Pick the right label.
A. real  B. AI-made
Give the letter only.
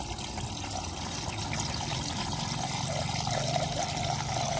A